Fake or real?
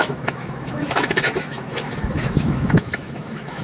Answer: fake